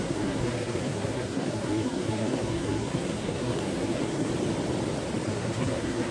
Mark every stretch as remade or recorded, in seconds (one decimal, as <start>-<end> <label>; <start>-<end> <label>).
0.0-4.3 remade; 4.3-5.3 recorded; 5.3-6.1 remade